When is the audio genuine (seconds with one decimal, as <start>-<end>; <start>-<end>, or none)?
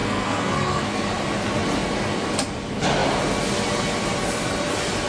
1.0-5.1